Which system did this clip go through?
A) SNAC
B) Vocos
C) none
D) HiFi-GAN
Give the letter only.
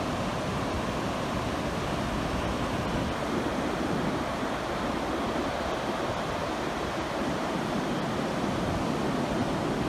C